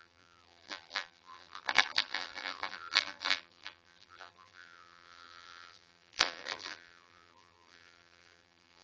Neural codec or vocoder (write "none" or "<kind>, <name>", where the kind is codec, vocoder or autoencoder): vocoder, BigVGAN v2